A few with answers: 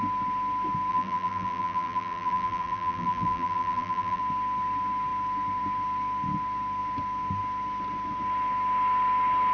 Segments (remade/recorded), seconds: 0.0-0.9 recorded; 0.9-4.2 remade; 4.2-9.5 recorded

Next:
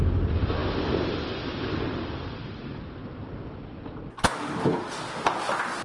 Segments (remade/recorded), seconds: 0.0-5.8 recorded

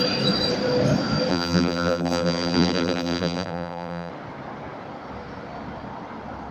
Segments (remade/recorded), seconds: 0.0-1.3 recorded; 1.3-4.1 remade; 4.1-6.5 recorded